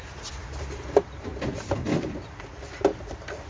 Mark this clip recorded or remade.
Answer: remade